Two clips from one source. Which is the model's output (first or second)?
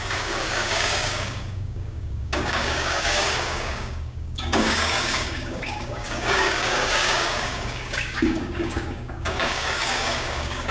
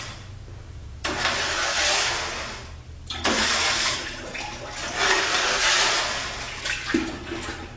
first